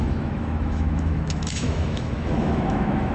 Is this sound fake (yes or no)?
yes